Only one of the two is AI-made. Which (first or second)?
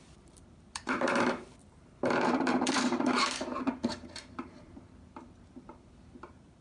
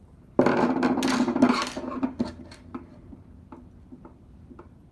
first